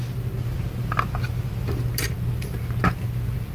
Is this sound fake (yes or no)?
no